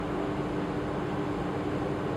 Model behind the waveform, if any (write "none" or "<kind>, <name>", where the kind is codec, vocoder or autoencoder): none